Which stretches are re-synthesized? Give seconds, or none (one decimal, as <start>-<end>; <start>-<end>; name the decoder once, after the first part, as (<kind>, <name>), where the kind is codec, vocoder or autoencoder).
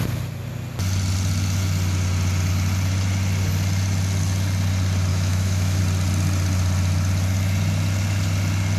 5.1-5.8 (autoencoder, DAC-VAE)